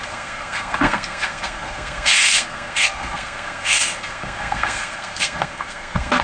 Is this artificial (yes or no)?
yes